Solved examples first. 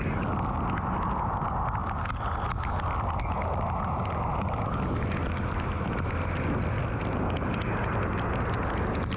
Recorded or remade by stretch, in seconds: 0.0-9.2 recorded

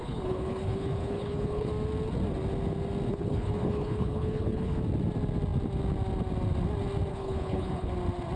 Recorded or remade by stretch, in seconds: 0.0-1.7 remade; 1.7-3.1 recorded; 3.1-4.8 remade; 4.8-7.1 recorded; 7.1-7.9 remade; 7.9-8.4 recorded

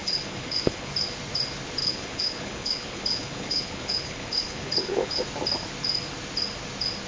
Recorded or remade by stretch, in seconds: 0.0-0.9 remade; 0.9-1.8 recorded; 1.8-5.2 remade; 5.2-7.1 recorded

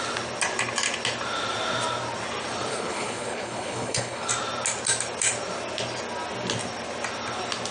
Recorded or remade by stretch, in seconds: 0.0-2.7 recorded; 2.7-4.3 remade; 4.3-7.7 recorded

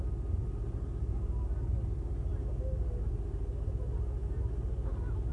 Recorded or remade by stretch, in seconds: 0.0-5.3 recorded